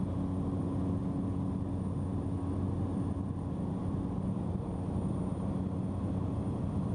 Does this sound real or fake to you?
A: real